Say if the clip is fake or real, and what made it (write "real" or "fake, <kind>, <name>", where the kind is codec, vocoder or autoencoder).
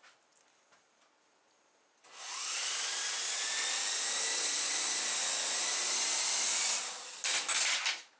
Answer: real